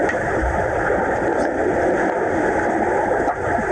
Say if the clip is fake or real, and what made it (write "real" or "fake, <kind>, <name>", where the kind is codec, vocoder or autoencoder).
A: real